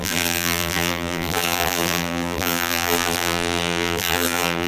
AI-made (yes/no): yes